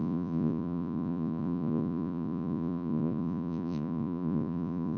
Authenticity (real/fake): fake